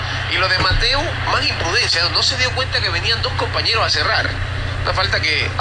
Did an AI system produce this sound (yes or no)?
no